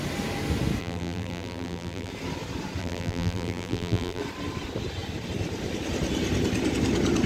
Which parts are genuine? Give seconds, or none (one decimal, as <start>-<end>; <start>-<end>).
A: 0.0-0.8; 2.1-2.8; 4.2-7.3